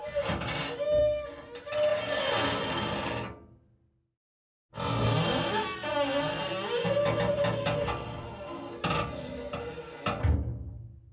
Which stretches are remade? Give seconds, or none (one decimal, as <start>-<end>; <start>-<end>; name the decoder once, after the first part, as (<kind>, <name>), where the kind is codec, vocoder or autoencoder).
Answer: none